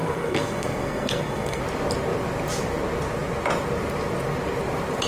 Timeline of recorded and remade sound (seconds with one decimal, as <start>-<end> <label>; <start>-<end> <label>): 0.0-1.6 remade; 1.6-5.1 recorded